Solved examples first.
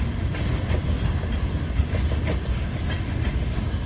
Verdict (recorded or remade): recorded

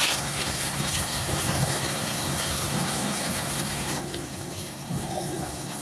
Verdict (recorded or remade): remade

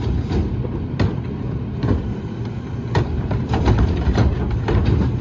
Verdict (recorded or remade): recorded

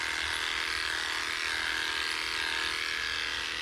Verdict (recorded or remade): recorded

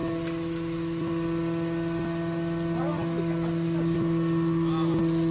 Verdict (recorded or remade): recorded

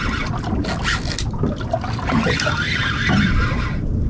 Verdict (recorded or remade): recorded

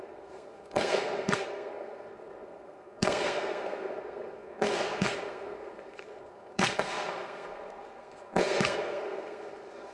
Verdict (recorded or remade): remade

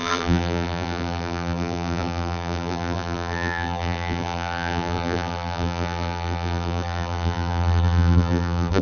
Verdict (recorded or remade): remade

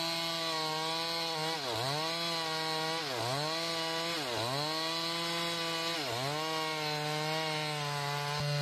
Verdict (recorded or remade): recorded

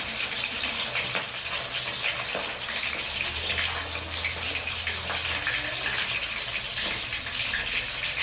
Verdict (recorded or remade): recorded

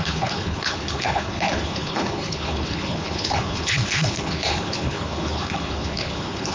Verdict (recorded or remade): remade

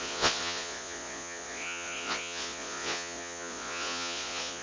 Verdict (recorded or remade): remade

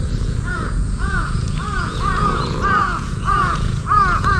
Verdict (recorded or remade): remade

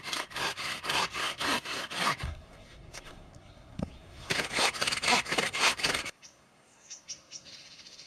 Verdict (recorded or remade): remade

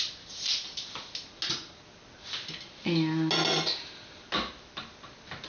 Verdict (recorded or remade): recorded